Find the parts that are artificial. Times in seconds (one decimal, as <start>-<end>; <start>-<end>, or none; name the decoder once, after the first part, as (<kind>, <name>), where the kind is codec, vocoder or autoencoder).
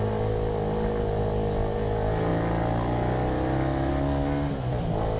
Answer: none